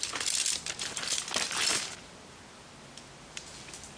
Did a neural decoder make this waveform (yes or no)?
no